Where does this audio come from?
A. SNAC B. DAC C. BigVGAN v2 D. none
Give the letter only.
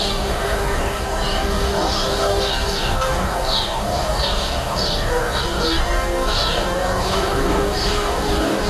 B